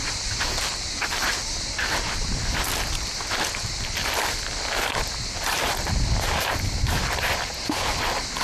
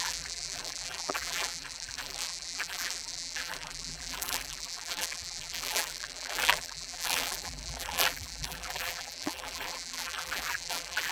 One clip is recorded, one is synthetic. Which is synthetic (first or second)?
second